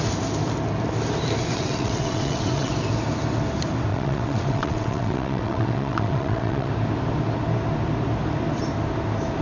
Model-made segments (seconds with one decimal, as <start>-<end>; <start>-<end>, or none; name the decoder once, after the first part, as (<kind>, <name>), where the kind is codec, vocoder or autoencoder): 1.5-2.7 (vocoder, WaveNeXt); 3.9-6.7